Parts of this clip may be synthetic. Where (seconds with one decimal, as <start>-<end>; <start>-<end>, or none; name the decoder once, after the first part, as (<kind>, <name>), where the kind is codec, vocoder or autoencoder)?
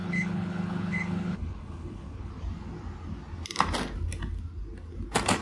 0.0-2.3 (codec, HILCodec)